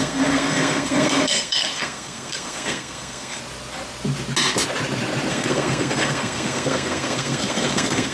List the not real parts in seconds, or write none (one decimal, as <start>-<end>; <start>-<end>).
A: 0.0-3.4; 5.3-8.1